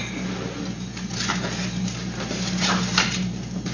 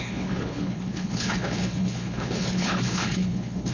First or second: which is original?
first